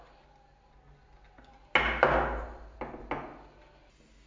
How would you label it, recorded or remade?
recorded